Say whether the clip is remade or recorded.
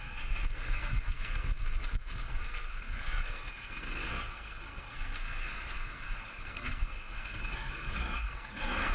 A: remade